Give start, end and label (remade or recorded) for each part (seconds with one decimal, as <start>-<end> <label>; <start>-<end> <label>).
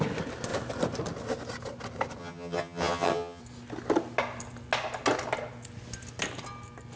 0.0-2.2 recorded; 2.2-3.4 remade; 3.4-7.0 recorded